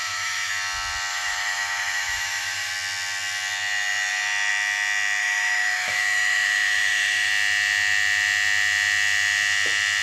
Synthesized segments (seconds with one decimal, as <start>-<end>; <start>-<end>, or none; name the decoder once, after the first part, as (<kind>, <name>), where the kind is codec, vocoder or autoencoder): 0.0-0.5 (autoencoder, DAC-VAE); 1.1-2.7; 5.2-7.3